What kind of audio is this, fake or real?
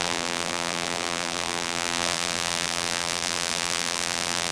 fake